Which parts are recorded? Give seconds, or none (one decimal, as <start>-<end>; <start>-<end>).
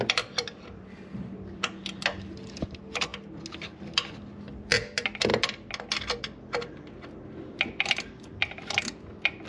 0.0-9.5